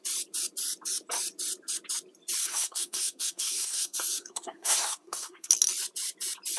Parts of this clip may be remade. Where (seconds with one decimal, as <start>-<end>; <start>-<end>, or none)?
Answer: 2.4-5.5